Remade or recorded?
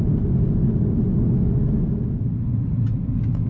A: recorded